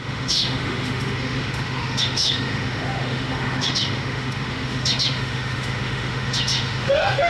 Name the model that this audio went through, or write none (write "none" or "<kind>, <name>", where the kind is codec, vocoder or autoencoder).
autoencoder, DAC-VAE